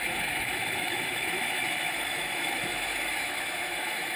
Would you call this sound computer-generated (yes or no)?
yes